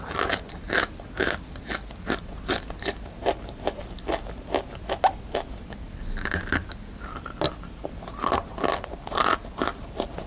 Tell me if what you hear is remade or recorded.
recorded